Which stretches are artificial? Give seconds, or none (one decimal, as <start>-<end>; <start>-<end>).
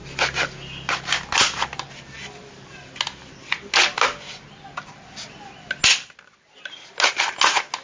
none